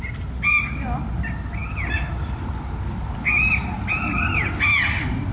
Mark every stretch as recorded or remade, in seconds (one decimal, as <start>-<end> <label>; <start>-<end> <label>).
0.0-5.3 recorded

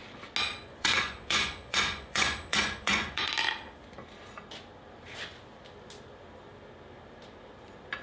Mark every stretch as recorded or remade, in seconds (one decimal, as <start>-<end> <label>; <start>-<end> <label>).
0.0-0.5 recorded; 0.5-3.3 remade; 3.3-8.0 recorded

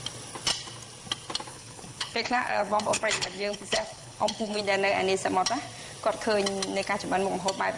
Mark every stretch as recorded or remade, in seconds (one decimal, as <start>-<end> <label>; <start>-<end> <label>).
0.0-1.5 recorded; 1.5-4.6 remade; 4.6-7.8 recorded

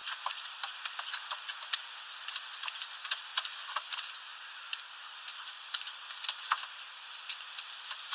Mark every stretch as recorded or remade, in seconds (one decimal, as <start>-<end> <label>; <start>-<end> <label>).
0.0-1.1 remade; 1.1-3.3 recorded; 3.3-4.6 remade; 4.6-5.3 recorded; 5.3-5.9 remade; 5.9-8.1 recorded

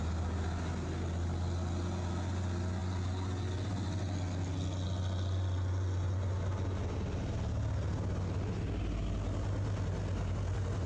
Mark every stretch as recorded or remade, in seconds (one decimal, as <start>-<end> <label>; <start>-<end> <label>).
0.0-10.9 recorded